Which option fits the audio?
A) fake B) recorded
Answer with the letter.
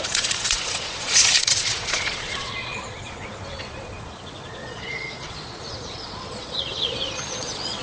A